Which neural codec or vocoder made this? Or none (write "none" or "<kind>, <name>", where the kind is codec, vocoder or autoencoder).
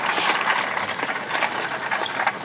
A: none